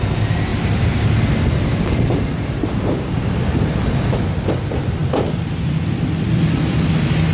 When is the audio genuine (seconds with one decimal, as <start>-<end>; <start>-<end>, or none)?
0.0-0.5; 3.5-7.3